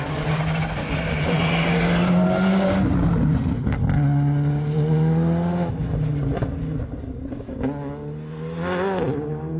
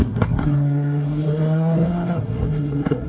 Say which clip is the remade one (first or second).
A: second